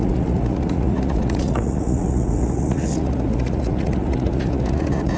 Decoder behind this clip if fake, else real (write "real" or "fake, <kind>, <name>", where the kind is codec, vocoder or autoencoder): fake, vocoder, Vocos